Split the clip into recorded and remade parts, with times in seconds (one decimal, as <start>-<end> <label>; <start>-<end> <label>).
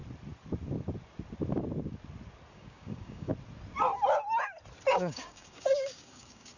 0.0-2.5 recorded; 2.5-3.3 remade; 3.3-4.9 recorded; 4.9-6.6 remade